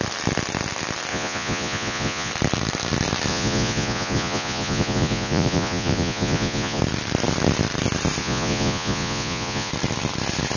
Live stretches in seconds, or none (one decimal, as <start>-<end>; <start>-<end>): 0.0-1.1; 2.3-3.3; 6.8-8.2; 9.7-10.6